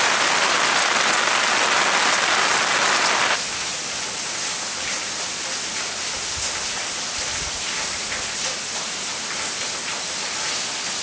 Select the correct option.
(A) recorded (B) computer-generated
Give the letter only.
A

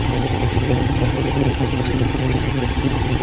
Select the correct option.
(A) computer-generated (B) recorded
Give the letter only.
A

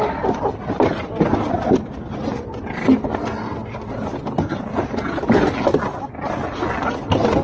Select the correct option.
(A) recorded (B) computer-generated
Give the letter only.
A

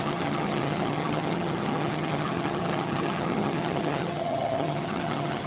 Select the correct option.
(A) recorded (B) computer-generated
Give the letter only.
B